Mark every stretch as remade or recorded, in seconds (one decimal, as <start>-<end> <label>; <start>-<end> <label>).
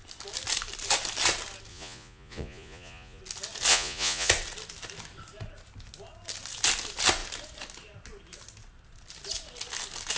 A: 0.0-1.7 recorded; 1.7-3.2 remade; 3.2-3.7 recorded; 3.7-4.3 remade; 4.3-10.2 recorded